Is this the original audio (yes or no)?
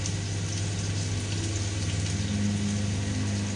yes